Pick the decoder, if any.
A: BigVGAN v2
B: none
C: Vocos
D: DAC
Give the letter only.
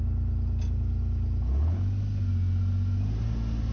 B